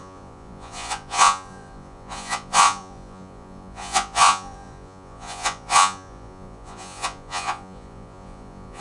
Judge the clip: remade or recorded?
remade